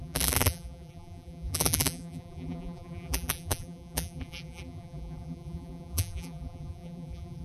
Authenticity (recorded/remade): remade